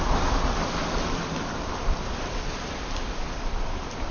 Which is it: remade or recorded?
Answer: recorded